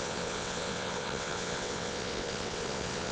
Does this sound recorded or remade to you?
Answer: remade